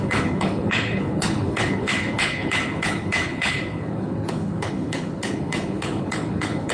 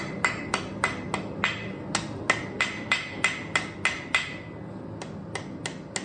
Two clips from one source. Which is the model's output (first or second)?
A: first